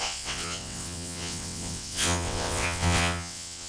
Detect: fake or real fake